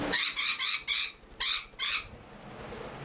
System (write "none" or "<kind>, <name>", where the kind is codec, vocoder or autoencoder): none